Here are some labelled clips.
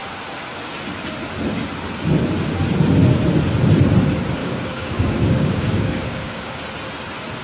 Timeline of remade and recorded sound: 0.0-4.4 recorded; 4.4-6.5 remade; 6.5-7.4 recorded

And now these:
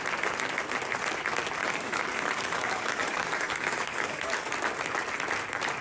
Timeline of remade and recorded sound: 0.0-1.6 recorded; 1.6-4.5 remade; 4.5-5.8 recorded

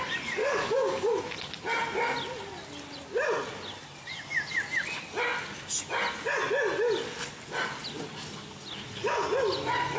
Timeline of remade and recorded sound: 0.0-0.4 recorded; 0.4-1.1 remade; 1.1-10.0 recorded